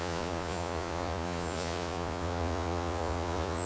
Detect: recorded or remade remade